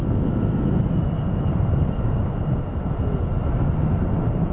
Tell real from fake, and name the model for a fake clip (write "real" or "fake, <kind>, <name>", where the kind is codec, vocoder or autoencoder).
real